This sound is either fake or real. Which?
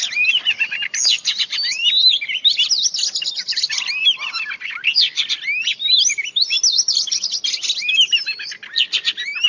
real